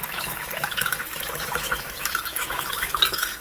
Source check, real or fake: fake